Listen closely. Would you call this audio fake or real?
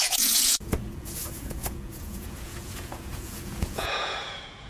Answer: fake